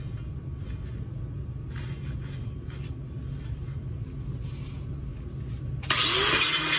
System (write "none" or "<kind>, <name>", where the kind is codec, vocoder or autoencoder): none